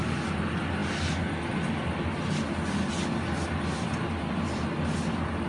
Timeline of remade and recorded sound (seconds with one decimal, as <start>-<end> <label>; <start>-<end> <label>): 0.0-5.5 recorded

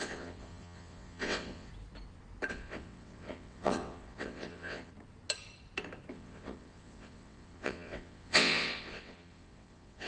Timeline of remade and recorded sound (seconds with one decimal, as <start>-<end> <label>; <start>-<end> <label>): 0.0-1.7 remade; 1.7-2.5 recorded; 2.5-4.9 remade; 4.9-6.1 recorded; 6.1-10.1 remade

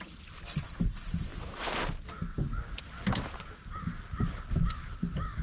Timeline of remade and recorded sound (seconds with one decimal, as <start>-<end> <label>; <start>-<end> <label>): 0.0-1.3 remade; 1.3-4.2 recorded; 4.2-5.4 remade